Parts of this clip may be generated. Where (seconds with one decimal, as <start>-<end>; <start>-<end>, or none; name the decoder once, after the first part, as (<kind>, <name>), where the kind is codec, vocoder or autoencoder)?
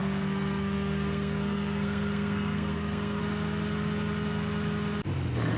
0.0-3.2 (codec, SNAC)